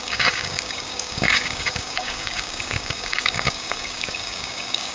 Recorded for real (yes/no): no